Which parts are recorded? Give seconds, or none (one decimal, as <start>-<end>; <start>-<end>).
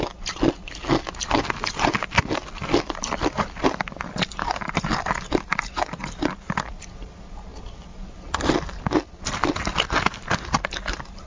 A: 0.0-11.3